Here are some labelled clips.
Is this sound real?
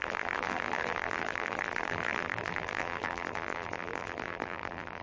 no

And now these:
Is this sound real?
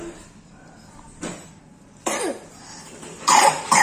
no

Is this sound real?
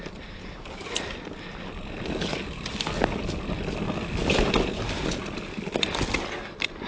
yes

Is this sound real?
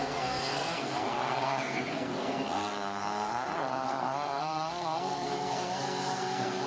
no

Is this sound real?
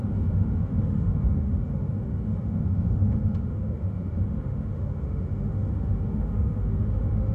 no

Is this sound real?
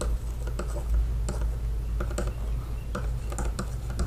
yes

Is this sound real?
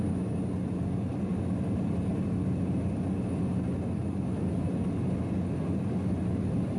yes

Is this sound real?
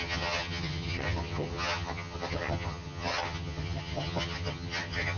no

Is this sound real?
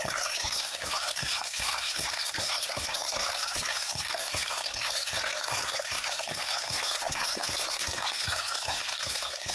no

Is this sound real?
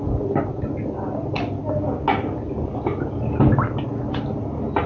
yes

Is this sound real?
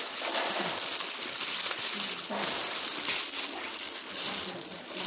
yes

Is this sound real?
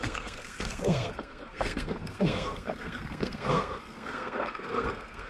no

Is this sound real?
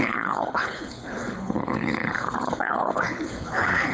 no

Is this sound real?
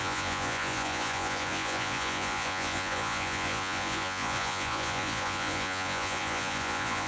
no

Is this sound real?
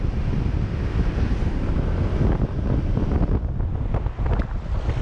yes